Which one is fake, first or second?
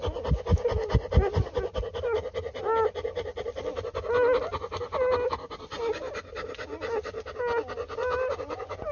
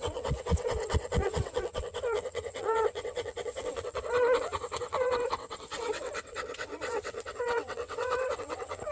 second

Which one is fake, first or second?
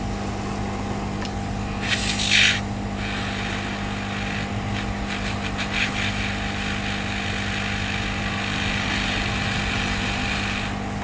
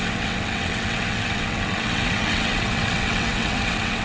second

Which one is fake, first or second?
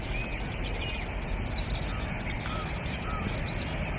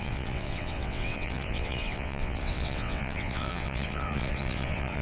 second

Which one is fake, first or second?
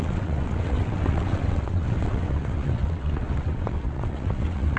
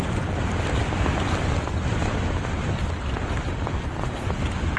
first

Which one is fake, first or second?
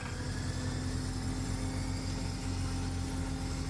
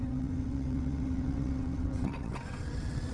second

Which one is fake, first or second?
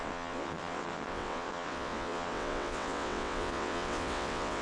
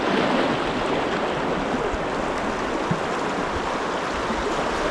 first